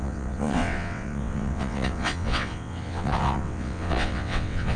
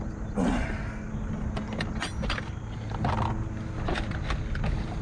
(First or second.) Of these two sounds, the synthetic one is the first